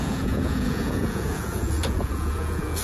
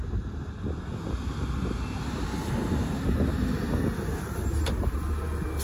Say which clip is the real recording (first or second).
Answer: second